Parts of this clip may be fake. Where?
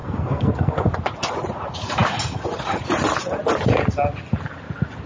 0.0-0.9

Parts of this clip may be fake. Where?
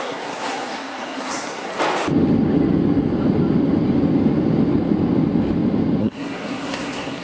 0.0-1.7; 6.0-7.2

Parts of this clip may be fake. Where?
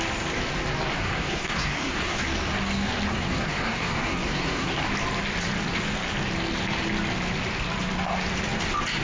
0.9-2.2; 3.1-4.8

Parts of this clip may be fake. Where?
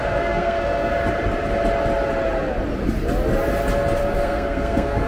0.0-0.9; 4.0-5.1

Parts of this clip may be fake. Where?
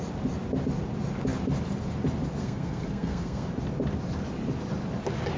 2.4-3.5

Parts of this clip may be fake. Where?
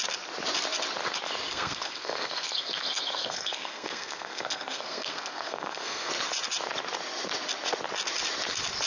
1.5-6.1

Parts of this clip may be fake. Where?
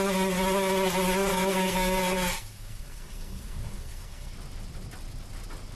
1.3-4.3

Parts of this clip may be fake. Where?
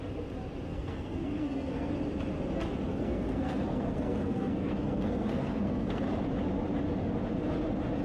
0.7-1.9; 2.9-6.0